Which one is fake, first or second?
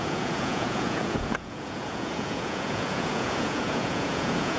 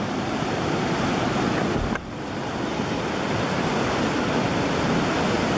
first